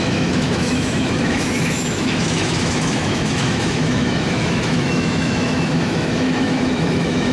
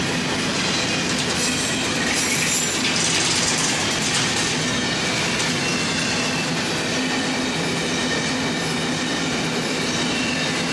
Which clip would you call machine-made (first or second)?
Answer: first